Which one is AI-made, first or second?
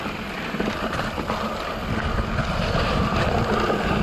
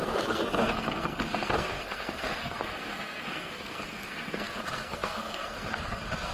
second